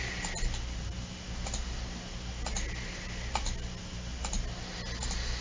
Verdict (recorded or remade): recorded